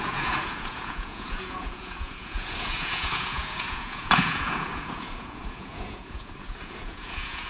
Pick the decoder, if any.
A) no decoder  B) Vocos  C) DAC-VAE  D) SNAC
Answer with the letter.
B